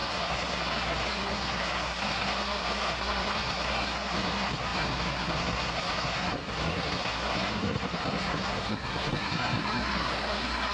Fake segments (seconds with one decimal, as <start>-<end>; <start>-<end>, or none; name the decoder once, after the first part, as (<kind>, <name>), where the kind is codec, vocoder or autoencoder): 0.0-10.7 (codec, SNAC)